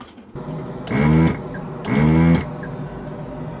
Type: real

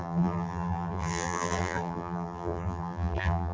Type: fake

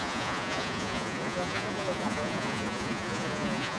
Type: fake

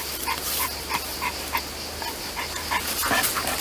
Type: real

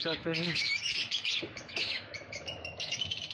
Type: fake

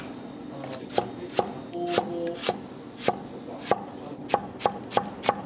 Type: real